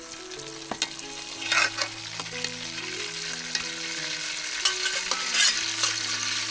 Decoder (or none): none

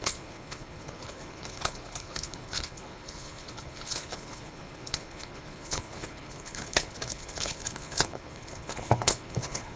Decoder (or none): codec, HILCodec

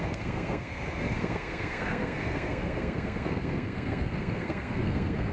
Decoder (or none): codec, SNAC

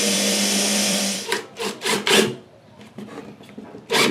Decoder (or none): vocoder, BigVGAN v2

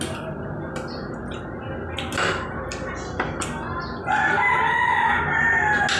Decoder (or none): none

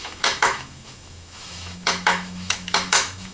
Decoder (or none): autoencoder, DAC-VAE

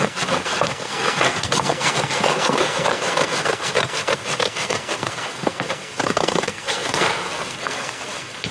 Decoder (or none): codec, SNAC